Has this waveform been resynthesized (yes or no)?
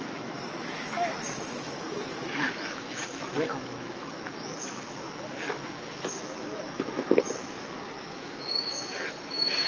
yes